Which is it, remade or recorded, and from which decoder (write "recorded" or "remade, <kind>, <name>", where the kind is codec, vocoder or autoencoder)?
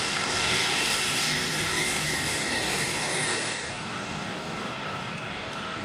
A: remade, codec, DAC